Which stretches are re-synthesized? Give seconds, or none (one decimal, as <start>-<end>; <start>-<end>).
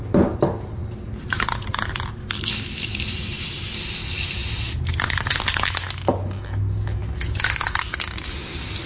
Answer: 0.8-3.8